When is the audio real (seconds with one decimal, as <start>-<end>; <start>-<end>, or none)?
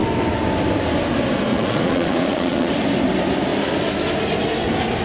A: 0.0-1.5; 2.7-5.0